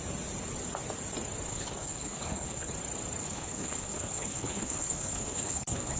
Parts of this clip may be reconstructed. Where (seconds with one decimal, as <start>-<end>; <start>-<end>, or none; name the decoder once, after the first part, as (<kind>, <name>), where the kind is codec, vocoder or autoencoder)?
1.5-2.7 (codec, HILCodec); 3.2-6.0